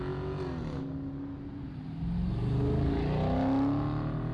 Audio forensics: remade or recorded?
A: recorded